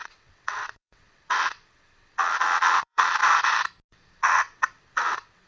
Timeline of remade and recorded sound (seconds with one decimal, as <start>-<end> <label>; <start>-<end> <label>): 0.0-3.2 remade; 3.2-3.9 recorded; 3.9-5.5 remade